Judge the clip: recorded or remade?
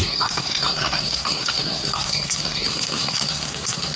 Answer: remade